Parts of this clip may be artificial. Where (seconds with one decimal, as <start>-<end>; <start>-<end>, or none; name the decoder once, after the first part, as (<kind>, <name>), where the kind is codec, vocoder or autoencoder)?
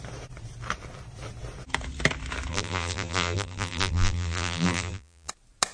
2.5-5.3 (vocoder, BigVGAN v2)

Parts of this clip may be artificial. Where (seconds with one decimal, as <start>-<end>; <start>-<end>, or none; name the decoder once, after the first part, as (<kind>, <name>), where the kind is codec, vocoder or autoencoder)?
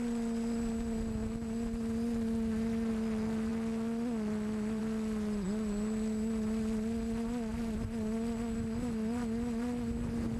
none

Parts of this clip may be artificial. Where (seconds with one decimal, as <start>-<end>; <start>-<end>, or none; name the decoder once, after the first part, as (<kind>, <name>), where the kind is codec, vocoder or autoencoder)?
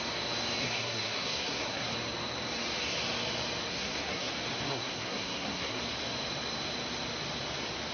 0.6-1.9 (codec, SNAC); 3.7-4.3; 4.7-5.8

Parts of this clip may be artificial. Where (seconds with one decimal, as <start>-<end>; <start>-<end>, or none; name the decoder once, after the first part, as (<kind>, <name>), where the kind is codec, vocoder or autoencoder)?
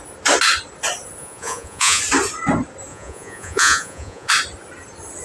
1.2-2.0 (vocoder, Vocos); 2.9-4.3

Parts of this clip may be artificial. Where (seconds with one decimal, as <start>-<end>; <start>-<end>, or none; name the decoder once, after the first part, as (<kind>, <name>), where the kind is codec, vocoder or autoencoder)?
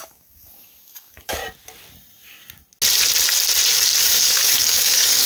0.0-1.4 (codec, DAC); 4.0-5.3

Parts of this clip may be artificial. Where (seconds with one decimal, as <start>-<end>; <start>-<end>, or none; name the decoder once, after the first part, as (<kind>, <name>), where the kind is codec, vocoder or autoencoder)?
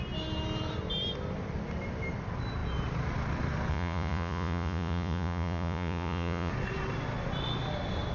3.7-6.5 (vocoder, Vocos)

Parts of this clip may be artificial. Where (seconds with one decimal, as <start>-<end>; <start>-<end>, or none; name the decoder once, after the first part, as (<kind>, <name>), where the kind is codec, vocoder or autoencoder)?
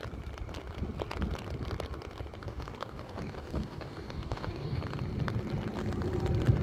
2.4-4.8 (codec, DAC)